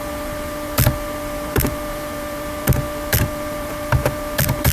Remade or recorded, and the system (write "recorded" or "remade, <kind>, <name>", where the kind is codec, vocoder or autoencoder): remade, vocoder, BigVGAN v2